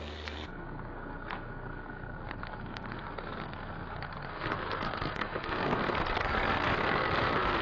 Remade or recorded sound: remade